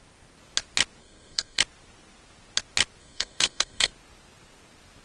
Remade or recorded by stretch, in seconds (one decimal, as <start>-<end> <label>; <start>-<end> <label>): 0.0-1.0 recorded; 1.0-1.6 remade; 1.6-3.0 recorded; 3.0-3.9 remade; 3.9-5.0 recorded